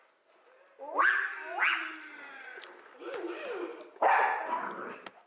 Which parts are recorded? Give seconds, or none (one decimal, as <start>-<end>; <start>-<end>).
0.0-3.7; 4.2-5.3

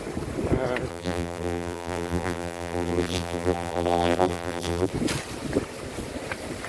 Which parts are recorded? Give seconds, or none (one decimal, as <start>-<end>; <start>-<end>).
0.0-0.9; 4.9-6.7

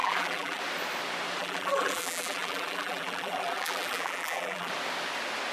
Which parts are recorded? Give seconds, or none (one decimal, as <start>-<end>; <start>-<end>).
0.6-1.4; 4.7-5.5